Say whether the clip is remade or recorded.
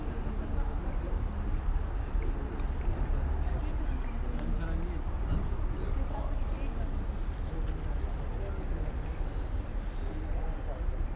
recorded